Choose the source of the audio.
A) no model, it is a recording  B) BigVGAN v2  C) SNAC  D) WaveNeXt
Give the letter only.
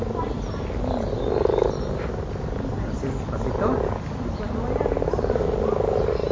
A